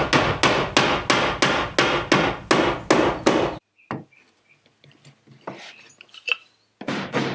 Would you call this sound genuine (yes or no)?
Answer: yes